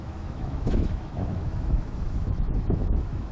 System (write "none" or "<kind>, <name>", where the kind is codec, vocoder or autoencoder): autoencoder, DAC-VAE